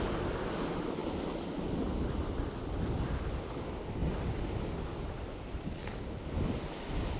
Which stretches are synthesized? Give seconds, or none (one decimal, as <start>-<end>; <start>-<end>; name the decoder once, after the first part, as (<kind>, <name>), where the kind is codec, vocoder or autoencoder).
none